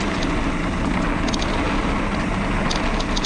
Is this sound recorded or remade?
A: recorded